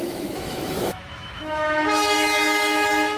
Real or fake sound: fake